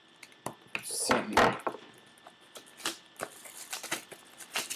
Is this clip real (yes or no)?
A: yes